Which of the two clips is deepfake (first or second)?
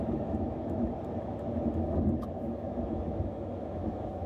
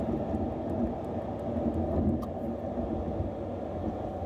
first